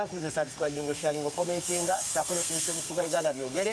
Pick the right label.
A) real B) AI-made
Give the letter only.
B